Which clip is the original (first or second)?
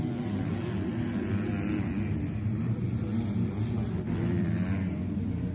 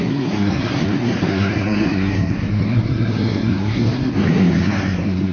first